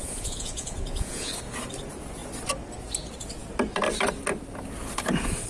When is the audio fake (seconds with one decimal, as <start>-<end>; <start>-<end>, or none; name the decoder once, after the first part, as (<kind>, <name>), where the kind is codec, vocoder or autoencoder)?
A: 0.0-1.3 (vocoder, Vocos)